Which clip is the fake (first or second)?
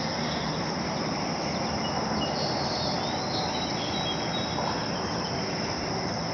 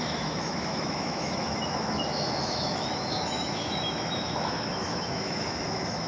second